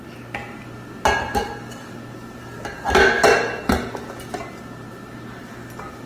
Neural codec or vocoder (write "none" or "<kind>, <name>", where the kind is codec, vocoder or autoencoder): none